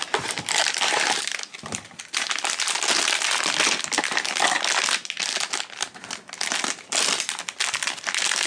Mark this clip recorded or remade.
recorded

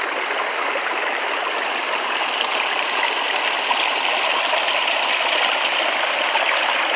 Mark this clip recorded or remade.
recorded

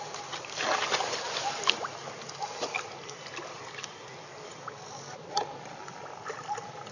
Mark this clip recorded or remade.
recorded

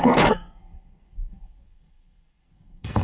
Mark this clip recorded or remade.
remade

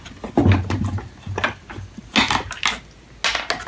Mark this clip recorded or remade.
recorded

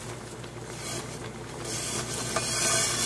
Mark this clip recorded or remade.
recorded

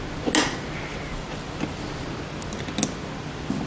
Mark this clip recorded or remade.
recorded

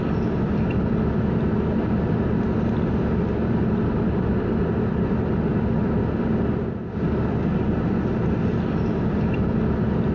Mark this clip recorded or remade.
recorded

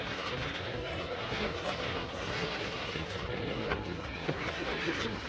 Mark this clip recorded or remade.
remade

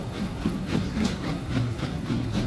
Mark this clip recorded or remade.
remade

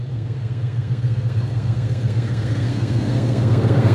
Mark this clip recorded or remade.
remade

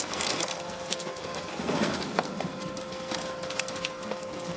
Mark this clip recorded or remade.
remade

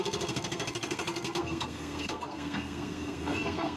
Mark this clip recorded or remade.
remade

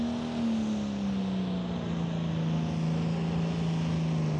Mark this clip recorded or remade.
recorded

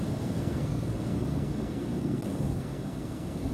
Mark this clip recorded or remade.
remade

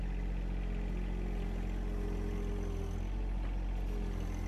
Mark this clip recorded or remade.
recorded